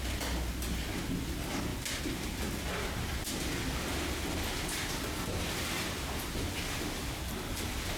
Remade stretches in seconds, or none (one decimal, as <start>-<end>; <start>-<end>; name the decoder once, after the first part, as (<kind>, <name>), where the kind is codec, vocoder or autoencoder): none